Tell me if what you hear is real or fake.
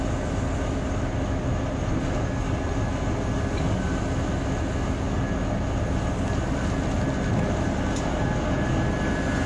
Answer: real